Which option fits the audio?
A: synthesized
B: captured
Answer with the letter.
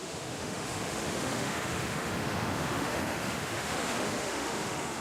A